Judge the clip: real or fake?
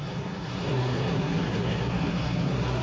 fake